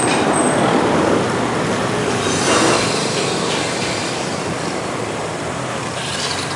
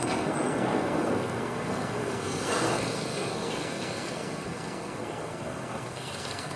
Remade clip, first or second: second